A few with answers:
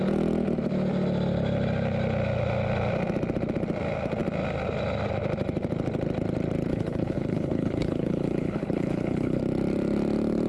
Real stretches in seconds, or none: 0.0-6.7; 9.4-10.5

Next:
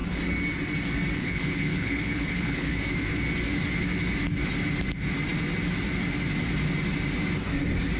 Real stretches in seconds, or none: 0.0-1.2; 2.8-8.0

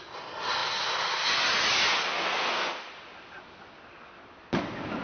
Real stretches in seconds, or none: 0.0-5.0

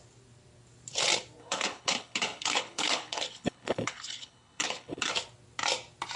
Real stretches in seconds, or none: 0.0-1.4; 5.1-6.2

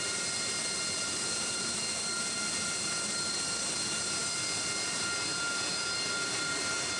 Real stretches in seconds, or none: 0.0-7.0

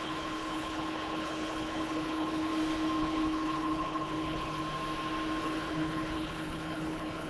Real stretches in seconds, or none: 2.5-3.0; 4.6-5.4

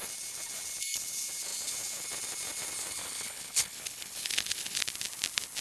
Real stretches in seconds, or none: 0.0-3.0; 4.8-5.6

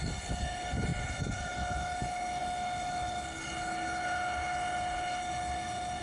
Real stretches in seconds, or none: none